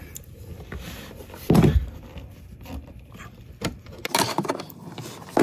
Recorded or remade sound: recorded